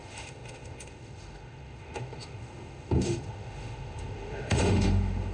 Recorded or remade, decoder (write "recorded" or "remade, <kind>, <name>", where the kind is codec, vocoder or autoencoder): remade, autoencoder, DAC-VAE